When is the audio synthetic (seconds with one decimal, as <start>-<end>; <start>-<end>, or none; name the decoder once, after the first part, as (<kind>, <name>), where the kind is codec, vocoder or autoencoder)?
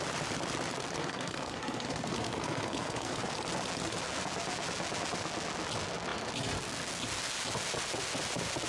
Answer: 1.0-3.2 (codec, SNAC)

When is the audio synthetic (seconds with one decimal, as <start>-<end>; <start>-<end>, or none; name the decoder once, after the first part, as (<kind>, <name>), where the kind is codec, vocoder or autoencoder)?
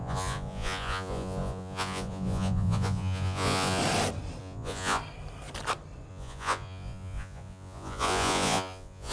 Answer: 0.0-3.8 (vocoder, Vocos); 4.4-5.0; 6.1-9.1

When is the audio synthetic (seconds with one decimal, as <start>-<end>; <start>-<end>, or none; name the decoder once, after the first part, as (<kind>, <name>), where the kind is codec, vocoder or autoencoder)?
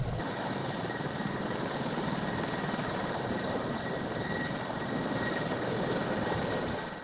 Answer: 0.6-1.9 (vocoder, BigVGAN v2); 2.8-5.9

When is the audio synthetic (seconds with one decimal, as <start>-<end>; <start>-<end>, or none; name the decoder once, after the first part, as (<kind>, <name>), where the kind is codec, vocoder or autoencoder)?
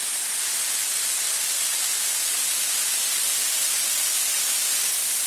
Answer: none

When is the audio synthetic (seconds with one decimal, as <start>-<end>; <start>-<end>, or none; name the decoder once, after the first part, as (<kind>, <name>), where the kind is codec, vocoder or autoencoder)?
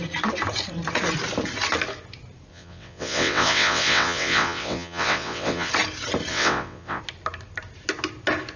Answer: 2.5-5.7 (vocoder, WaveNeXt); 6.3-7.0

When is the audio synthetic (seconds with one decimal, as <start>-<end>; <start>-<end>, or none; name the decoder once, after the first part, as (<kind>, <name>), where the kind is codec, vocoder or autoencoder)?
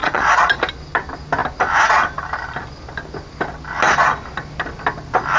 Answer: 0.0-0.6 (vocoder, Vocos)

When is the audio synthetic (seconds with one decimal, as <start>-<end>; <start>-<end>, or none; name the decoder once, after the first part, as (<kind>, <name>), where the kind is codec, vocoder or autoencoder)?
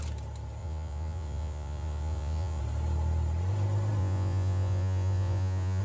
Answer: 0.6-2.6 (vocoder, Vocos); 4.0-5.8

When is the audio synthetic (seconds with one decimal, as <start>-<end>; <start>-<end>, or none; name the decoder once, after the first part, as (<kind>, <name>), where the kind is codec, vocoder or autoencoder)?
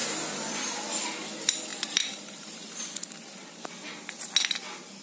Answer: 0.0-0.5 (vocoder, BigVGAN v2); 1.7-3.7